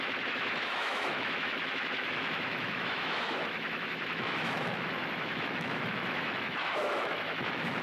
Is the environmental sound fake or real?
fake